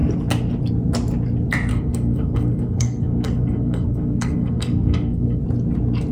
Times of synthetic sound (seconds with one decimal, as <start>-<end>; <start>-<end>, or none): 1.7-5.4